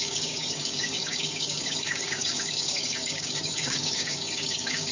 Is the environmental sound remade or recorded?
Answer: remade